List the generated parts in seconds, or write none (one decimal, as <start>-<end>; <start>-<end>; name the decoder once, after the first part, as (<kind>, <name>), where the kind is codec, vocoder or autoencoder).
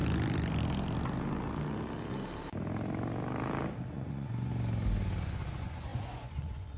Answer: 3.9-4.5 (vocoder, Vocos); 5.2-6.8